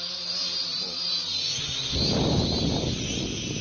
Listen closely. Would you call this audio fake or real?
real